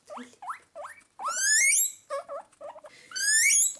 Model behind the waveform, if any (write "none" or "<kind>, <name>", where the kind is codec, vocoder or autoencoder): none